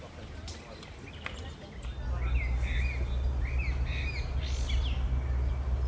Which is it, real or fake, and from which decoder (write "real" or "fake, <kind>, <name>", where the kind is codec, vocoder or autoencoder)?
real